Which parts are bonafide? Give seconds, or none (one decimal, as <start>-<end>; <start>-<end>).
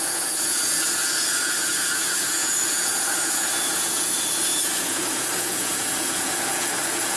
none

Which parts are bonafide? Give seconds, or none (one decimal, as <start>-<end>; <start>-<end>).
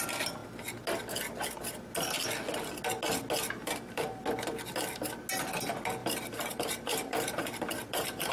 0.0-3.6; 4.2-6.0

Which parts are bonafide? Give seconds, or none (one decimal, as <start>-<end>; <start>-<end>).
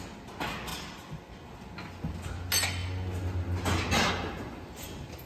0.0-5.3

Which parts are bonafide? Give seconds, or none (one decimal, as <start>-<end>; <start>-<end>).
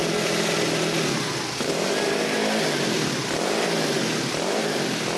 0.0-5.2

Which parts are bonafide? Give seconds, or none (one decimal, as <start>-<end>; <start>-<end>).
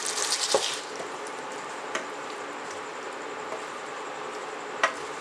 0.0-5.2